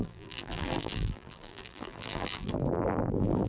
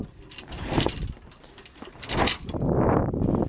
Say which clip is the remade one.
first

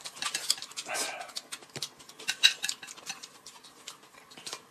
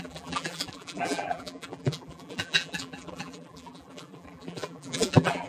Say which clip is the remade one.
second